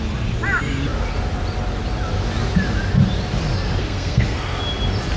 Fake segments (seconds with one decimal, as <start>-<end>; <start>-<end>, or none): 3.8-4.6